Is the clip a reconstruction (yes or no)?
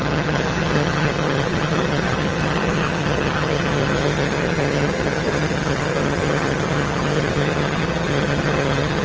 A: yes